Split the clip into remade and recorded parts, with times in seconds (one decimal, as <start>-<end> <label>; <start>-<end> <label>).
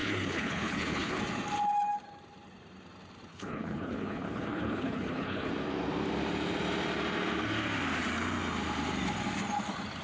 0.0-1.2 remade; 1.2-3.3 recorded; 3.3-5.5 remade; 5.5-10.0 recorded